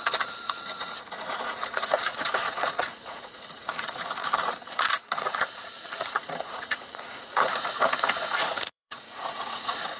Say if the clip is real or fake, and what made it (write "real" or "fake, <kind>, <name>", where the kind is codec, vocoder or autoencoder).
fake, vocoder, Vocos